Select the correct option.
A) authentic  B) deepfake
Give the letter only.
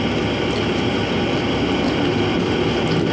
A